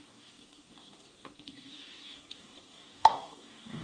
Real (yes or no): no